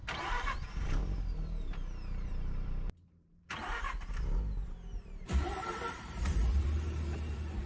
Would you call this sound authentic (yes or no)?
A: no